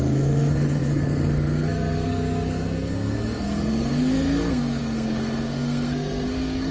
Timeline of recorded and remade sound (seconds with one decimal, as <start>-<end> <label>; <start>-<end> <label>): 0.0-6.7 remade

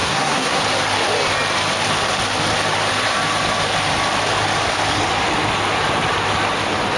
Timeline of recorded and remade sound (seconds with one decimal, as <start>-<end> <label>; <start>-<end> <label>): 0.0-0.6 remade; 0.6-7.0 recorded

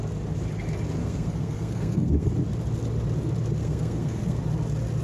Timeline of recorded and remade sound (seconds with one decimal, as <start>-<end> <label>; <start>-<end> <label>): 0.0-1.0 recorded; 1.0-2.3 remade; 2.3-3.6 recorded; 3.6-4.4 remade; 4.4-5.0 recorded

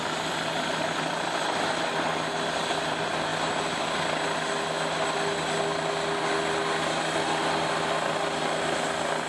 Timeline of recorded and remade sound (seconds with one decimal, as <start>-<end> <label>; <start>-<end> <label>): 0.0-9.3 recorded

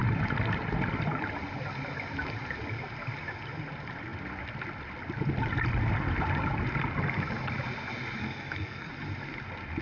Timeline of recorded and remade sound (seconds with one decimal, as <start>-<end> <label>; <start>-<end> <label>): 0.0-8.2 recorded; 8.2-8.9 remade; 8.9-9.8 recorded

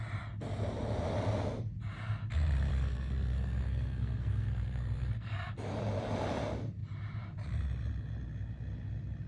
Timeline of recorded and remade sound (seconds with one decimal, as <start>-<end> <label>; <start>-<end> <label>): 0.0-2.7 recorded; 2.7-5.5 remade; 5.5-9.3 recorded

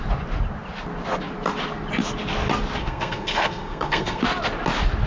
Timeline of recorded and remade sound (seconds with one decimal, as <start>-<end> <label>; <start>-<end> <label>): 0.0-2.8 recorded; 2.8-4.2 remade; 4.2-5.1 recorded

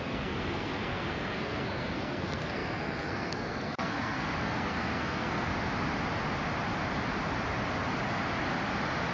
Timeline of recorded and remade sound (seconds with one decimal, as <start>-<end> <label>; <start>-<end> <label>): 0.0-5.5 remade; 5.5-9.1 recorded